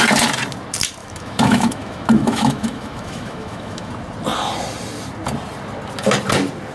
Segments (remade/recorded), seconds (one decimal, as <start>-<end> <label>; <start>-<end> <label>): 0.0-1.0 recorded; 1.0-3.9 remade; 3.9-6.7 recorded